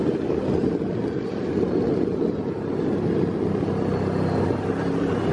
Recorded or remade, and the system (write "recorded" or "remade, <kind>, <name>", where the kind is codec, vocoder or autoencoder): recorded